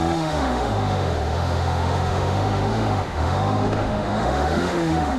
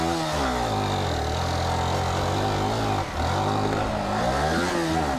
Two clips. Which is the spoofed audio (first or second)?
first